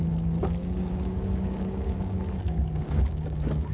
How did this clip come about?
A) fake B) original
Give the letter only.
A